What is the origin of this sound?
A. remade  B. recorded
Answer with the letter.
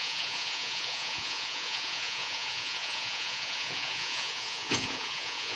A